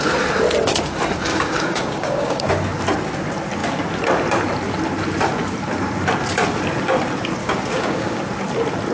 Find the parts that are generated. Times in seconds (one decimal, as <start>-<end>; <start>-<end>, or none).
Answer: 1.3-2.5; 7.4-8.2